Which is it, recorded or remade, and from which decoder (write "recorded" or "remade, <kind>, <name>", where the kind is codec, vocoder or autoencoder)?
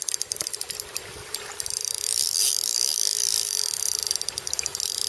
remade, vocoder, BigVGAN v2